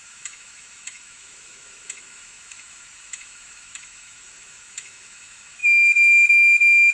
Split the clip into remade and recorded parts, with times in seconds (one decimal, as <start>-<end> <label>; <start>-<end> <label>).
0.0-6.9 remade